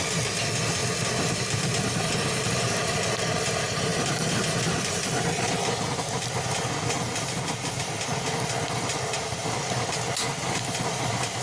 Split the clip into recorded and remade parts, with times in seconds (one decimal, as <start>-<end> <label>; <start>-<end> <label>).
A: 0.0-11.4 recorded